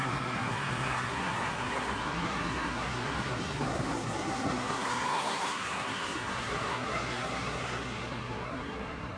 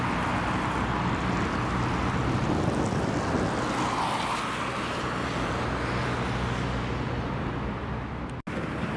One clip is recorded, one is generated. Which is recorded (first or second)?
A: second